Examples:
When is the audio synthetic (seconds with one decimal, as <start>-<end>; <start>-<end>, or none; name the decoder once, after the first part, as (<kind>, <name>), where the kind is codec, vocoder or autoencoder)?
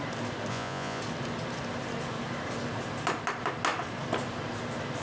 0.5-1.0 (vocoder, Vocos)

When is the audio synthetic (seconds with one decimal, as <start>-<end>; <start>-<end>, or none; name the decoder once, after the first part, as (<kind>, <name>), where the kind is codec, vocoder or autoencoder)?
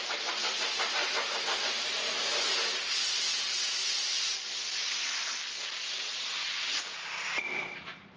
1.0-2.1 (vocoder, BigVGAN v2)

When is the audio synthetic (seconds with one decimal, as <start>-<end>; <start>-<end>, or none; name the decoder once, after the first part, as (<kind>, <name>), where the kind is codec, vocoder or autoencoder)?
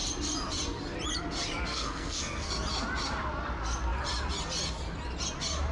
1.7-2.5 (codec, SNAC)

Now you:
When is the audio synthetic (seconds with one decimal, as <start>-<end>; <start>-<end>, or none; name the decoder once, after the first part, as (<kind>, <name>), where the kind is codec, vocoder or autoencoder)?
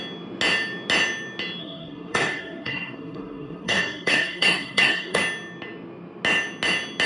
1.6-5.2 (codec, SNAC)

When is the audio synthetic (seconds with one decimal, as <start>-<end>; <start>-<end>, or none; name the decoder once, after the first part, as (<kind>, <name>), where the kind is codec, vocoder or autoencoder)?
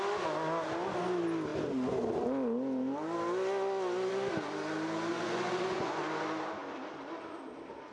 5.1-6.0 (vocoder, Vocos)